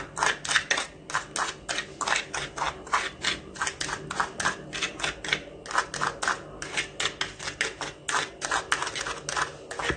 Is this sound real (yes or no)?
yes